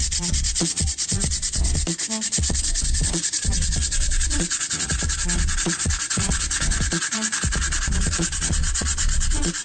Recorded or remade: remade